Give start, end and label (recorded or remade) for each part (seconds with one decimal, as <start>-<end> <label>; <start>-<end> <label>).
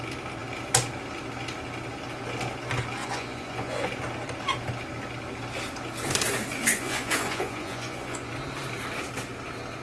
0.0-3.0 recorded; 3.0-3.9 remade; 3.9-6.6 recorded; 6.6-8.3 remade; 8.3-9.8 recorded